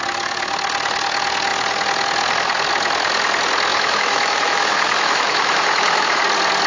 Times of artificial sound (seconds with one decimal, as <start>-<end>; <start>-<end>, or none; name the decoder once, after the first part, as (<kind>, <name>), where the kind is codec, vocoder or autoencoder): 3.7-6.2 (autoencoder, DAC-VAE)